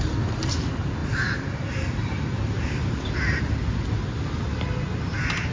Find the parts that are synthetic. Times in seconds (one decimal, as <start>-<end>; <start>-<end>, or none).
1.0-3.4